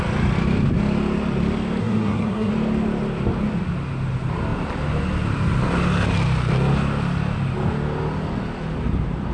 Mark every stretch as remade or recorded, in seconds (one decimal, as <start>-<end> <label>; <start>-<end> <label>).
0.0-1.8 recorded; 1.8-2.5 remade; 2.5-9.3 recorded